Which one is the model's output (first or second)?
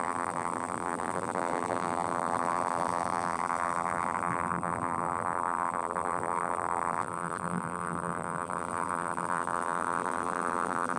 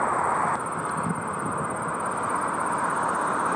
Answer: first